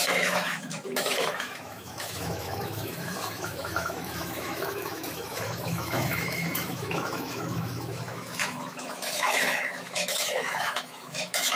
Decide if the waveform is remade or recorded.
remade